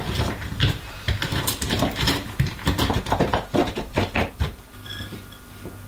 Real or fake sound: fake